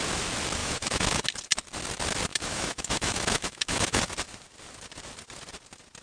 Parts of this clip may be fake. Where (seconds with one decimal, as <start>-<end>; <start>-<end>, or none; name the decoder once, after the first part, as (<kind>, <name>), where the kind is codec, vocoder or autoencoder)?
0.6-1.2 (autoencoder, DAC-VAE); 2.3-4.0